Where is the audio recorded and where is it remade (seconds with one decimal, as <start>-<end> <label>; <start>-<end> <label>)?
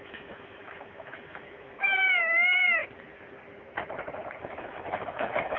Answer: 0.0-2.8 remade; 2.8-4.4 recorded; 4.4-5.6 remade